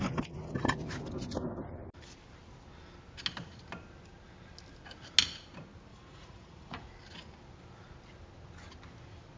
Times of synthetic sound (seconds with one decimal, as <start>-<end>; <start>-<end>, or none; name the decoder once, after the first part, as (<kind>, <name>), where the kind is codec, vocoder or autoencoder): 5.9-6.9 (vocoder, Vocos)